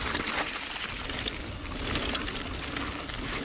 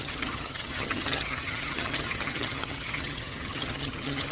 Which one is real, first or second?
first